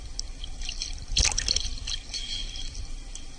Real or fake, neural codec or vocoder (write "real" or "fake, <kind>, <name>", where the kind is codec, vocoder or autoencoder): real